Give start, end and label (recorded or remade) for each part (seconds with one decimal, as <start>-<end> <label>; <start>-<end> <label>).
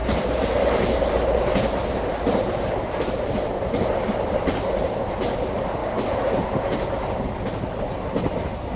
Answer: 0.0-2.1 remade; 2.1-8.8 recorded